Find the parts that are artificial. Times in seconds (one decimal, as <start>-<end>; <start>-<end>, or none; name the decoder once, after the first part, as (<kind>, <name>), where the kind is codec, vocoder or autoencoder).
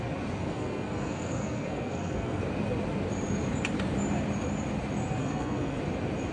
0.4-2.4 (codec, SNAC); 5.2-5.8